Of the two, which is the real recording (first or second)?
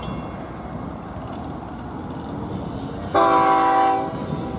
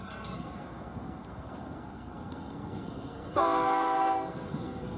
first